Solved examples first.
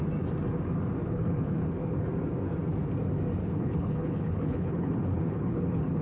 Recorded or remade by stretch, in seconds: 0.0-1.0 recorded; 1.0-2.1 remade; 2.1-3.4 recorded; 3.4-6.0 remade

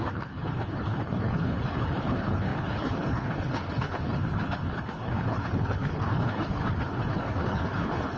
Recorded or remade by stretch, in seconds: 0.0-8.2 remade

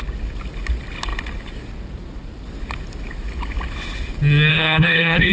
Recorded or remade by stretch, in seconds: 0.0-4.5 recorded; 4.5-5.3 remade

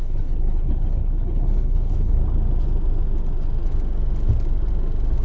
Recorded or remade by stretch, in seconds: 0.0-2.2 remade; 2.2-5.2 recorded